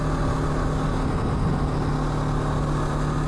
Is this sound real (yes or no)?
yes